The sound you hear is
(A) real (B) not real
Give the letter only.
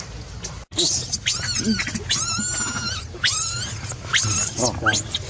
A